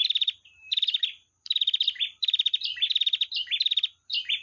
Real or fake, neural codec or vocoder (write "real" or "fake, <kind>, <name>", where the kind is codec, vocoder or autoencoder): fake, vocoder, BigVGAN v2